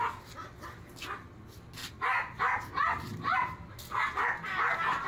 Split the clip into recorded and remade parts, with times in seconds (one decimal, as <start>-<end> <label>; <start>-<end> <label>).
0.0-5.1 recorded